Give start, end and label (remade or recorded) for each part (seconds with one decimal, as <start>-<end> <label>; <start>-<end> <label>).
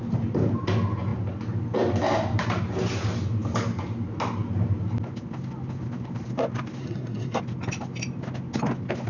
0.0-6.8 recorded; 6.8-7.4 remade; 7.4-9.1 recorded